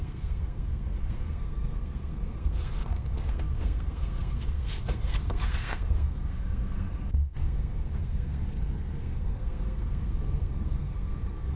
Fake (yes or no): yes